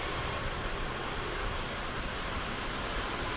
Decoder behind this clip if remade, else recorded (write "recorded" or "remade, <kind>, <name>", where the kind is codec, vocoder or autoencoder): recorded